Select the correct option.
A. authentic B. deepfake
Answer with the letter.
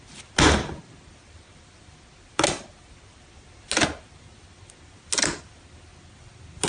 A